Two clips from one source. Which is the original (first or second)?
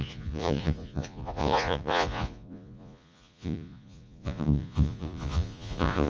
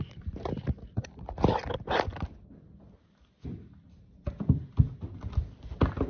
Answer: second